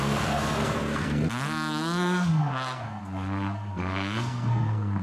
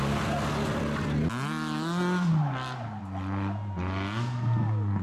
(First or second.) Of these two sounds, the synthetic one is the first